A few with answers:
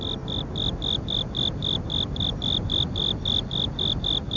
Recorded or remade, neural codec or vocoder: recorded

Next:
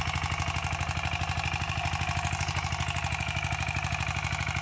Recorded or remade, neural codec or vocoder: recorded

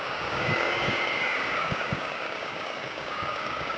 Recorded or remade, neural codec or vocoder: remade, codec, DAC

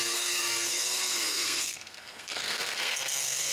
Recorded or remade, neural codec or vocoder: remade, codec, SNAC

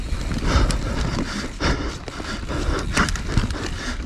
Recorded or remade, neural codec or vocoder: recorded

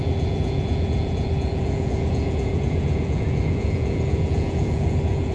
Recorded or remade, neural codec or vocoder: remade, vocoder, Vocos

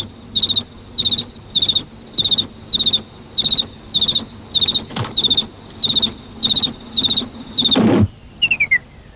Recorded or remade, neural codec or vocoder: recorded